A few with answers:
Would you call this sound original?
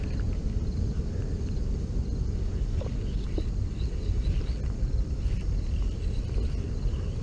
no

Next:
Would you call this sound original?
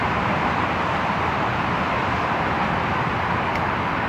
yes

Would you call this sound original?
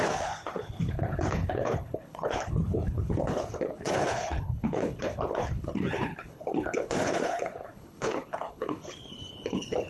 no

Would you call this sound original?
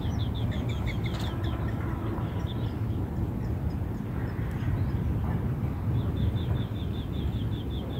yes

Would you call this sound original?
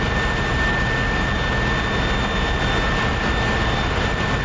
yes